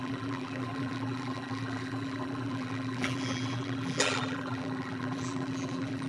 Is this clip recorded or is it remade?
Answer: remade